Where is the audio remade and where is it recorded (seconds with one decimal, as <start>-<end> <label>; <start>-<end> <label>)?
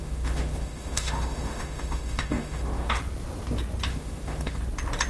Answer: 0.0-3.0 remade; 3.0-3.9 recorded; 3.9-4.6 remade; 4.6-5.1 recorded